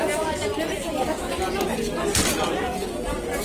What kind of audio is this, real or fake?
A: real